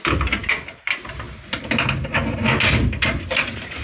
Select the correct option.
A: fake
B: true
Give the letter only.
B